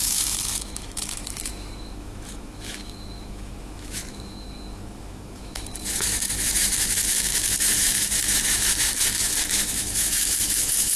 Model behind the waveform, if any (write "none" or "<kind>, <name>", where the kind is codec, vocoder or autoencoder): autoencoder, DAC-VAE